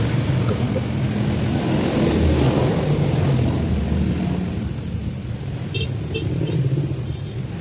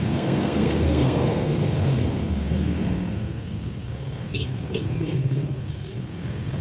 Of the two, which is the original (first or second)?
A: first